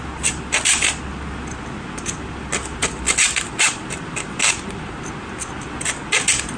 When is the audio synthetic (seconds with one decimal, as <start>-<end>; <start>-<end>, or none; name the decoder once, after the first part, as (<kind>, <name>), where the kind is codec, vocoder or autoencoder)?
2.8-3.7 (vocoder, BigVGAN v2)